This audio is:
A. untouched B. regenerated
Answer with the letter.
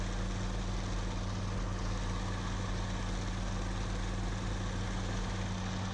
A